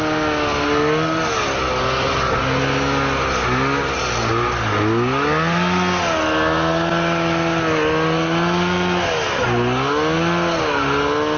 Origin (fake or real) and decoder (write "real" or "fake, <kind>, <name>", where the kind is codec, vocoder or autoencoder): real